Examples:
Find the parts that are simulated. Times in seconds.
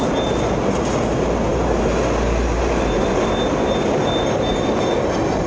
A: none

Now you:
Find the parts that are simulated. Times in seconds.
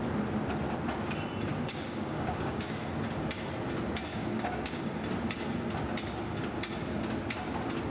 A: 1.5-2.8 (codec, DAC); 4.1-4.9